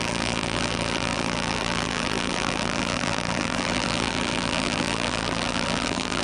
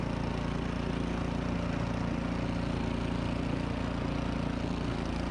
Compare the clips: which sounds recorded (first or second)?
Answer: second